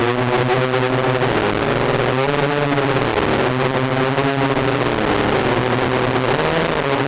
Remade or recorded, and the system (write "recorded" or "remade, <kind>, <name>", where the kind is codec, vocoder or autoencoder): recorded